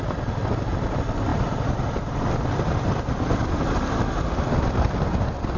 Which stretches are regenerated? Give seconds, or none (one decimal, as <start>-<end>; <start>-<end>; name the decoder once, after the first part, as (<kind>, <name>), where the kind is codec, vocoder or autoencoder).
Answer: none

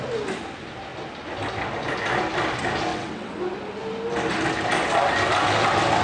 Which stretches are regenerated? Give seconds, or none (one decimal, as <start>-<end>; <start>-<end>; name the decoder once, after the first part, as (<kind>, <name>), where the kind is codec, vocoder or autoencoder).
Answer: 2.9-3.4 (vocoder, WaveNeXt)

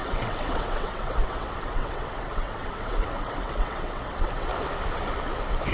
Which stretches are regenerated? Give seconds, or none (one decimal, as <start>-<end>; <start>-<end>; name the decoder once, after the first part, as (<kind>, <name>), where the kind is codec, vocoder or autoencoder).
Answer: 0.0-4.5 (vocoder, WaveNeXt)

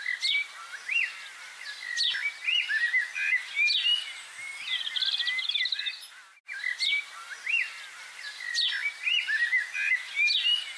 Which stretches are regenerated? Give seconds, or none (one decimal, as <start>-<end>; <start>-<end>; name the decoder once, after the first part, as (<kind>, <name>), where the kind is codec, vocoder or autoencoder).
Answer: none

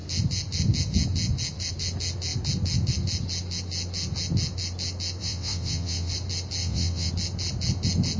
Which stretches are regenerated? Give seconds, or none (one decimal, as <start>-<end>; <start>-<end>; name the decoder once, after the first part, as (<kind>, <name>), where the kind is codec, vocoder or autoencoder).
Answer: 5.2-6.1 (vocoder, WaveNeXt); 6.6-7.1

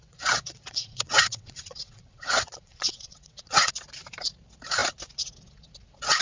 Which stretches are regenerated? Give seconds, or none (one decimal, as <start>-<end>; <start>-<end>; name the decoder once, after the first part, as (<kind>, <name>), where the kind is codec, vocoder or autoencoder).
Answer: 0.0-3.7 (vocoder, WaveNeXt)